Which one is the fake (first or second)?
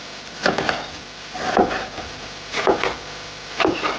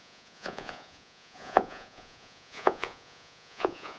second